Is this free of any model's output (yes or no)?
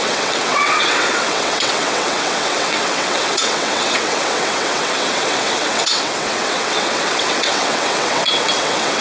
no